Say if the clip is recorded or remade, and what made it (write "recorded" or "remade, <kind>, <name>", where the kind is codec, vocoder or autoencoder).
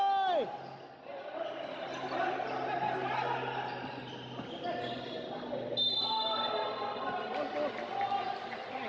recorded